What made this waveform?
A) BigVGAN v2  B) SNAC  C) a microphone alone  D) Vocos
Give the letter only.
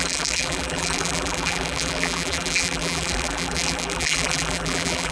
A